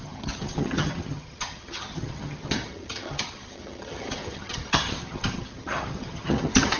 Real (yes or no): no